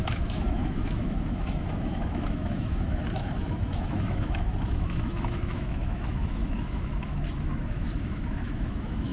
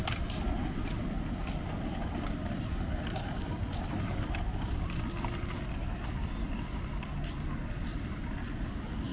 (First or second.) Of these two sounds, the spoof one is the first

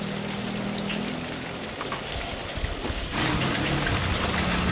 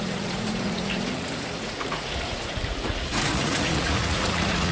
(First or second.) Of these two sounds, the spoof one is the second